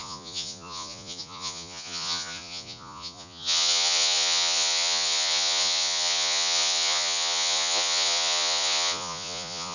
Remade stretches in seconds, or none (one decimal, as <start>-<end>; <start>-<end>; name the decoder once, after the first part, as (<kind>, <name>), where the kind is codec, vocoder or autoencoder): 0.0-9.7 (vocoder, Vocos)